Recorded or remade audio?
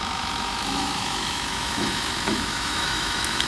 remade